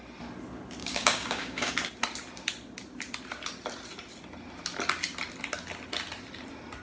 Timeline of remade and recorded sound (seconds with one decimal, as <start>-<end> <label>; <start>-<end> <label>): 0.0-0.8 recorded; 0.8-1.7 remade; 1.7-6.8 recorded